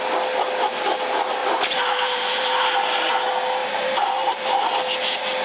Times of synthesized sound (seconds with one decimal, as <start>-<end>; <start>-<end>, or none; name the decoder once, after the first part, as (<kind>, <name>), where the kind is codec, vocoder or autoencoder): 1.4-2.6 (vocoder, BigVGAN v2); 3.6-4.6